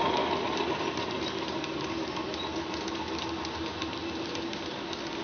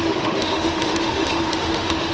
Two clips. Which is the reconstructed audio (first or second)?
second